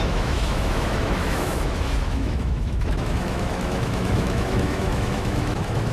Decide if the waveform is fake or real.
fake